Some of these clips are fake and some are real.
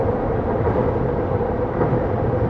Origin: fake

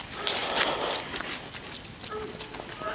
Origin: real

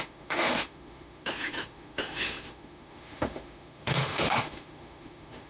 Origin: fake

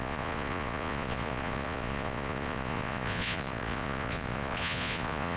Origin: fake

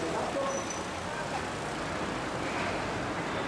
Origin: real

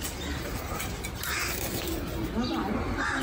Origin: real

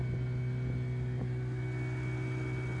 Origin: real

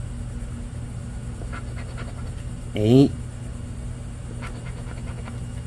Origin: real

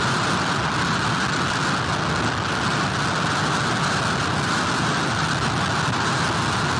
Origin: real